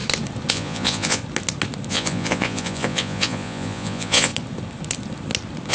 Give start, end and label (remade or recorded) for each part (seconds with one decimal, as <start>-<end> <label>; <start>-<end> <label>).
0.0-0.5 recorded; 0.5-1.2 remade; 1.2-1.9 recorded; 1.9-4.3 remade; 4.3-5.7 recorded